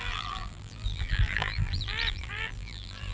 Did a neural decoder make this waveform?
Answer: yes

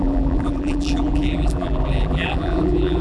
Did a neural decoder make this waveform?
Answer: yes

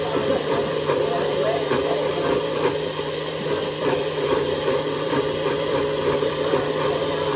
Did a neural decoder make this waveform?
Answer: yes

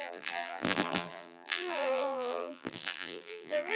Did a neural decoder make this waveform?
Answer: yes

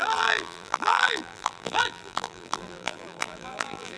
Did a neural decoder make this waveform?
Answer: yes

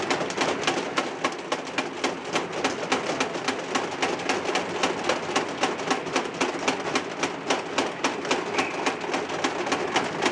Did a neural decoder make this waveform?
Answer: no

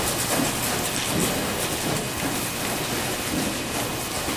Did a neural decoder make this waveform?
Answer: no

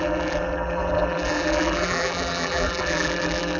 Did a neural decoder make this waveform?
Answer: yes